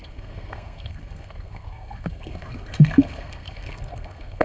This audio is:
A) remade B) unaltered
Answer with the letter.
A